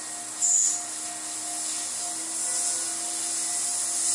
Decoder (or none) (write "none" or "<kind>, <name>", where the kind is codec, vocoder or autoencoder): none